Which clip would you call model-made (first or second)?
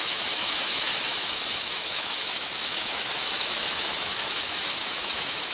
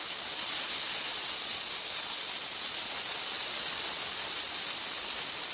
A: first